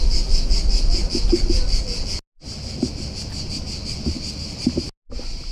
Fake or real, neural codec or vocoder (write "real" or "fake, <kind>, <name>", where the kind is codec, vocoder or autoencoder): real